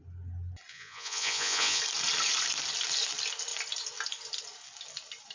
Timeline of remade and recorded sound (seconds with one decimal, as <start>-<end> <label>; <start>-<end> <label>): 0.0-0.7 recorded; 0.7-1.8 remade; 1.8-5.3 recorded